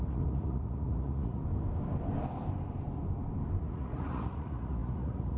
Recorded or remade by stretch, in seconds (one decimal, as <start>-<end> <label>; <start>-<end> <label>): 0.0-1.4 remade; 1.4-3.6 recorded; 3.6-5.4 remade